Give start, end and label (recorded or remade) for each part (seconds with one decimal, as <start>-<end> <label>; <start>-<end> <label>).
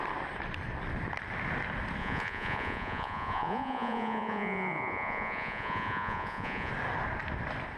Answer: 0.0-2.0 recorded; 2.0-6.7 remade; 6.7-7.8 recorded